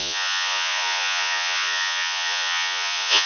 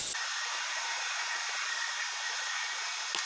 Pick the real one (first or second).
second